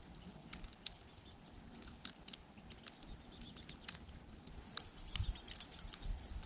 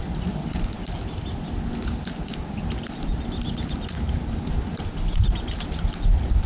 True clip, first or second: second